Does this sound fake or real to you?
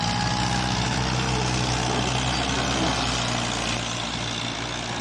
real